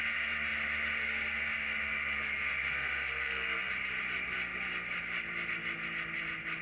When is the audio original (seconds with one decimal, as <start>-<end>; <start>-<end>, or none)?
0.0-2.6; 3.7-6.6